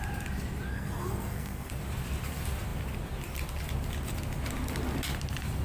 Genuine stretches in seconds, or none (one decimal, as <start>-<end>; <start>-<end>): 0.0-0.7; 1.7-5.6

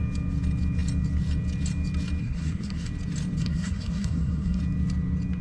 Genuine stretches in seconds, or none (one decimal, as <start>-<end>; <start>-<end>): 0.0-2.2; 2.9-3.4; 4.6-5.4

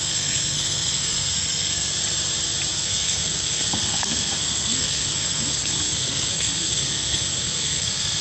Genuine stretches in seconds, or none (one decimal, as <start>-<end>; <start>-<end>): 1.9-2.7

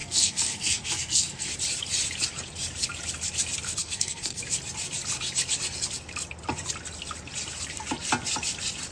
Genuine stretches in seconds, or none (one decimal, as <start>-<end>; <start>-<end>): 1.5-3.8; 4.4-8.9

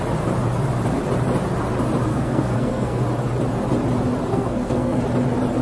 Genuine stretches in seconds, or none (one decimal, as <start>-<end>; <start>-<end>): 0.0-2.1; 3.0-4.3; 5.0-5.6

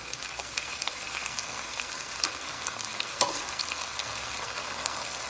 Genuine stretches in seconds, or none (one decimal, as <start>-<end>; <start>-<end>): none

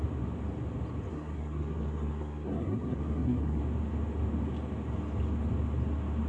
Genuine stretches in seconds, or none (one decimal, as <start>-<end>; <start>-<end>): 0.0-1.1; 3.6-6.3